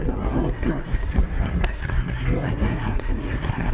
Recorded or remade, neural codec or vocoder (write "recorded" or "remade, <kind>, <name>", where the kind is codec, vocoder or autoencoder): remade, codec, SNAC